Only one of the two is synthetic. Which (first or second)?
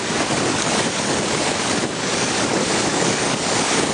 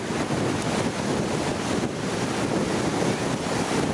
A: first